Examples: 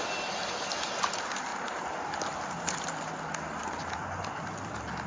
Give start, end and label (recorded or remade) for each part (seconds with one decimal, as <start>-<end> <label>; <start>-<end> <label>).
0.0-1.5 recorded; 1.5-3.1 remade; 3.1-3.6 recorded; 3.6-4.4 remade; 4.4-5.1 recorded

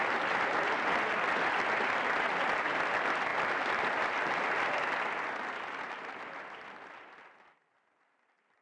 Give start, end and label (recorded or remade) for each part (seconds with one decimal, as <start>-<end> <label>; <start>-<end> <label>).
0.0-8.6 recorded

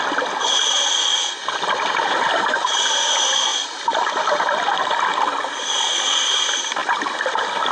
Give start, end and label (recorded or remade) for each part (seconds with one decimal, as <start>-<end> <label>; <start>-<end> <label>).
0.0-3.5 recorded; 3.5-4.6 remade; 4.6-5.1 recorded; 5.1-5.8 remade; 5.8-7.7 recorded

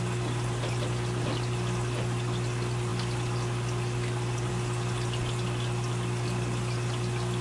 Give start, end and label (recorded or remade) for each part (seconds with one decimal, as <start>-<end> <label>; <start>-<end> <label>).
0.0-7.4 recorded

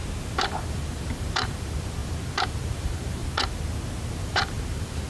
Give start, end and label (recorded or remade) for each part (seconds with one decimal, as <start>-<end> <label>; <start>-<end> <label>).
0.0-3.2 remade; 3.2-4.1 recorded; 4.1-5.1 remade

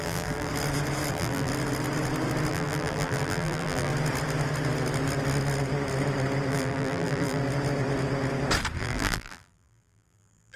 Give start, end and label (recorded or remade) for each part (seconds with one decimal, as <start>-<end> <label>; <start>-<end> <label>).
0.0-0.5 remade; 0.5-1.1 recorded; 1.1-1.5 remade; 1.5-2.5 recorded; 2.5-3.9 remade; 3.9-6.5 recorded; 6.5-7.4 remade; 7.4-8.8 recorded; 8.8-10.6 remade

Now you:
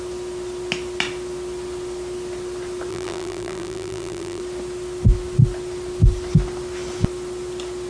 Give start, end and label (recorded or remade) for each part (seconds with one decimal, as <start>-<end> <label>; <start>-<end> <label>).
0.0-2.9 recorded; 2.9-4.4 remade; 4.4-7.9 recorded

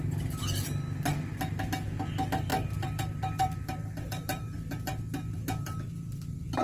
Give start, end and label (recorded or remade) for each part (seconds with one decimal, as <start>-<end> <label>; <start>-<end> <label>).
0.0-2.5 recorded; 2.5-5.0 remade; 5.0-6.6 recorded